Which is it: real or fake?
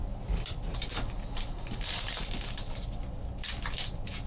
real